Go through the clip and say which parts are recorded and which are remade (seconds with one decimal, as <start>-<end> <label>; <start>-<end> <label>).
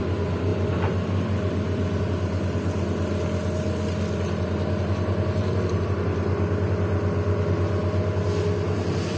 0.0-9.2 recorded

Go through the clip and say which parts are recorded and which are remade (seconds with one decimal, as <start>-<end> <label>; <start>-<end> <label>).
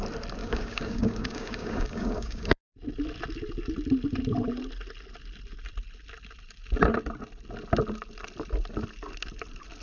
0.0-0.4 recorded; 0.4-2.6 remade; 2.6-9.8 recorded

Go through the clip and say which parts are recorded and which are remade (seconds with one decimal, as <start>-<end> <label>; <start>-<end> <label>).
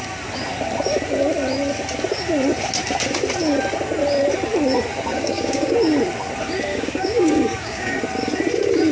0.0-5.1 recorded; 5.1-5.7 remade; 5.7-6.7 recorded; 6.7-8.0 remade; 8.0-8.9 recorded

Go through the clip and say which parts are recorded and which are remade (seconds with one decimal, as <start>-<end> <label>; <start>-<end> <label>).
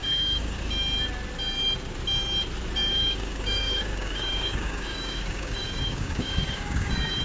0.0-0.6 remade; 0.6-2.8 recorded; 2.8-7.2 remade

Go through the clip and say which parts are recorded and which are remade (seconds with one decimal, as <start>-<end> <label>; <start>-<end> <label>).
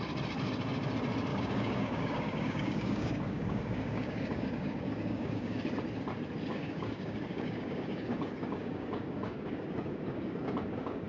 0.0-1.3 recorded; 1.3-5.8 remade; 5.8-6.5 recorded; 6.5-11.1 remade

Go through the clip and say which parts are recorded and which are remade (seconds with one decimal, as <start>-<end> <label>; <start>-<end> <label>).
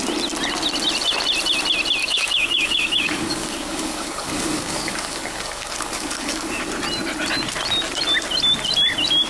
0.0-2.0 recorded; 2.0-6.6 remade; 6.6-9.3 recorded